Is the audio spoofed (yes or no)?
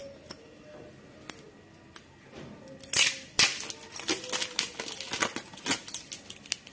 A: no